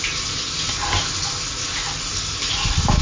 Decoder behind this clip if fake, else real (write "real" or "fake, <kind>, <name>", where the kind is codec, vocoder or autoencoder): real